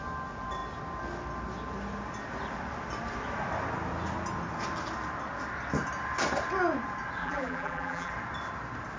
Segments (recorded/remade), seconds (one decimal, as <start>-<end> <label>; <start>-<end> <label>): 0.0-7.2 recorded; 7.2-8.1 remade; 8.1-9.0 recorded